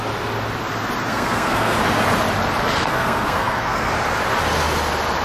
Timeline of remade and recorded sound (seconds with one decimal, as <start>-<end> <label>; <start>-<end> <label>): 0.0-1.1 recorded; 1.1-1.8 remade; 1.8-2.8 recorded; 2.8-3.9 remade; 3.9-5.2 recorded